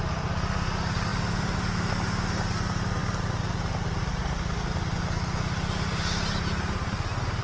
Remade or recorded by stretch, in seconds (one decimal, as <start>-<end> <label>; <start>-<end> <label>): 0.0-7.4 recorded